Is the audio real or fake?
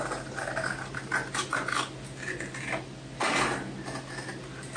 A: real